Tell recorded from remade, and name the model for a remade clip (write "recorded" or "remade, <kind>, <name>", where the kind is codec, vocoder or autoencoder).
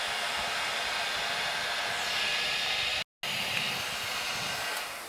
recorded